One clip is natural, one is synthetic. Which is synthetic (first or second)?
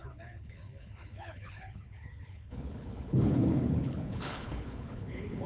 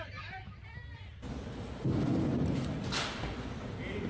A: first